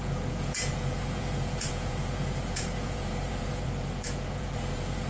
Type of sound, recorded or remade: remade